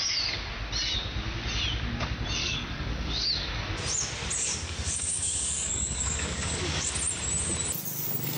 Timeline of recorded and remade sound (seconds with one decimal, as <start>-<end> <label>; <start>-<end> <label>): 0.0-2.4 recorded; 2.4-3.8 remade; 3.8-4.5 recorded; 4.5-6.9 remade; 6.9-8.4 recorded